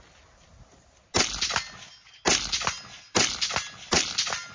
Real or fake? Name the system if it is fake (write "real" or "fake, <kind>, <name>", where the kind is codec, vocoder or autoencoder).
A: real